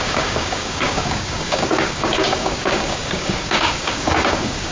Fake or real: fake